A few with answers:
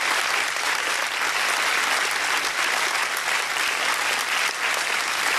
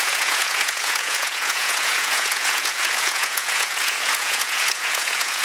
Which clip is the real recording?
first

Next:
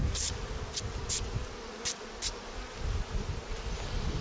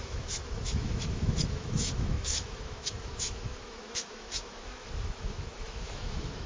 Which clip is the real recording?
first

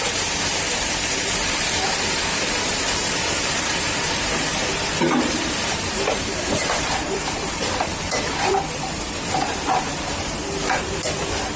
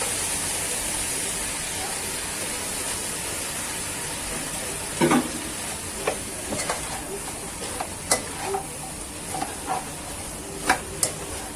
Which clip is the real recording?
second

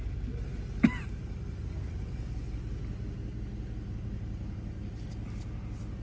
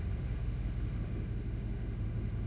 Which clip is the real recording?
first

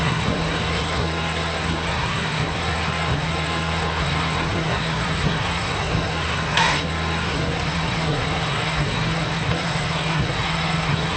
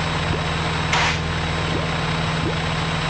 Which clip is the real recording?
second